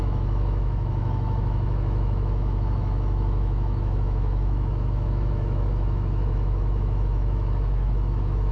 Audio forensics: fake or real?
fake